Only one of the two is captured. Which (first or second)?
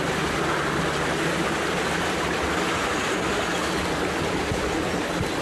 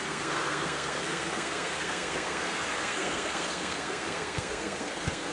first